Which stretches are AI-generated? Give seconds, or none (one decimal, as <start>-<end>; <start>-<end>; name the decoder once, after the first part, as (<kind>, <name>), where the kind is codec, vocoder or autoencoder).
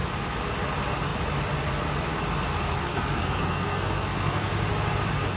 2.9-4.5 (codec, SNAC)